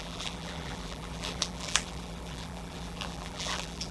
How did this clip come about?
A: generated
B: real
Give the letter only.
A